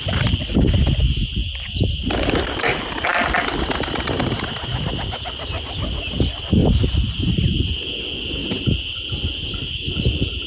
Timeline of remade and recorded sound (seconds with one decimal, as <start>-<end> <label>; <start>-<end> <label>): 0.0-10.5 recorded